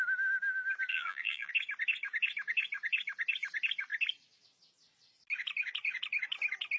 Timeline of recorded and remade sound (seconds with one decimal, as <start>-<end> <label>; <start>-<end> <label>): 0.0-0.9 recorded; 0.9-1.5 remade; 1.5-6.8 recorded